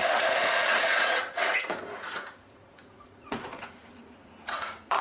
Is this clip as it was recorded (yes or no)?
no